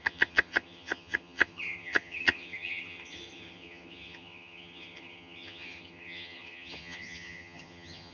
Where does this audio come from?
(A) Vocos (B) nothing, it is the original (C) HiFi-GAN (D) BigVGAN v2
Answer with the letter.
C